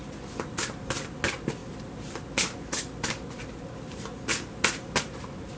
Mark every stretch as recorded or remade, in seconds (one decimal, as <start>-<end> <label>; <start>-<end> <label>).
0.0-5.6 recorded